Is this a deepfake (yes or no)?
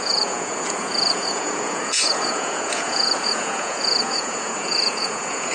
yes